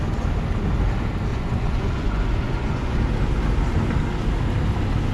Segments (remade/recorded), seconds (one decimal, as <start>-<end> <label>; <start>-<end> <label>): 0.0-1.3 recorded; 1.3-3.0 remade; 3.0-5.1 recorded